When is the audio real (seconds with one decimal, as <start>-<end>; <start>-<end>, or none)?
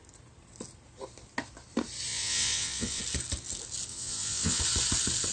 0.0-2.1; 3.0-3.9; 4.6-5.3